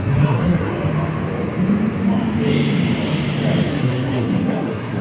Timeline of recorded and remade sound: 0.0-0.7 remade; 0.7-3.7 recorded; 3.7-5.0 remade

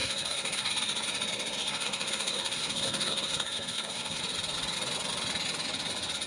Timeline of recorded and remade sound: 0.0-0.7 remade; 0.7-1.6 recorded; 1.6-4.2 remade; 4.2-6.3 recorded